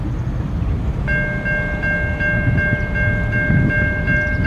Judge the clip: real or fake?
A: real